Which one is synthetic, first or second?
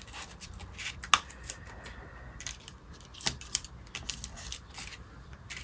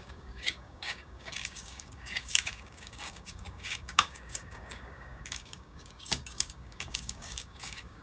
second